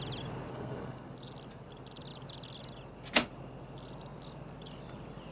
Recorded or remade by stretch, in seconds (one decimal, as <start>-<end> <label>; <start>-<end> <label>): 0.0-0.5 recorded; 0.5-1.1 remade; 1.1-5.3 recorded